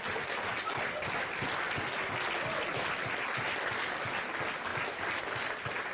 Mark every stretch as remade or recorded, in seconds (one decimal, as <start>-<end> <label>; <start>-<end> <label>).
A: 0.0-4.7 recorded; 4.7-5.2 remade; 5.2-5.9 recorded